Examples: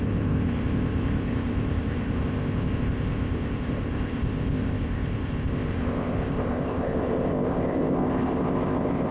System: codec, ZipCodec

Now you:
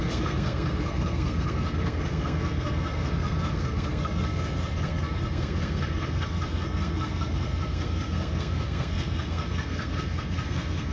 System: codec, SNAC